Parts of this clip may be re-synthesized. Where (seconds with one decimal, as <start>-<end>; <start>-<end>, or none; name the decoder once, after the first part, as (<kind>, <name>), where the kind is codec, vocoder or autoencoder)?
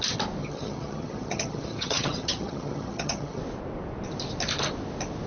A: 0.4-3.4 (vocoder, HiFi-GAN)